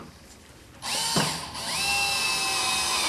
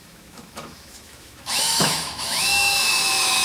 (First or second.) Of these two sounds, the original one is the first